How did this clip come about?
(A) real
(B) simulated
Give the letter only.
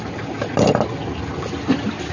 A